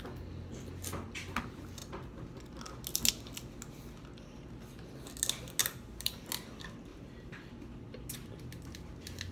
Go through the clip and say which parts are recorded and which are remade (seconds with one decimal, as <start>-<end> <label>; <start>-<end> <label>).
0.0-5.6 recorded; 5.6-6.3 remade; 6.3-6.9 recorded; 6.9-7.5 remade; 7.5-9.3 recorded